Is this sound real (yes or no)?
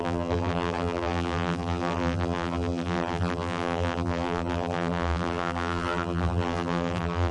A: no